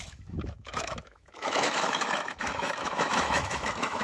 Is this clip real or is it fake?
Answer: fake